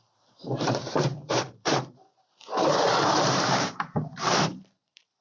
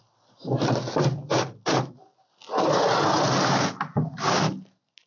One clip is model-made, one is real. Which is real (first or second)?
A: second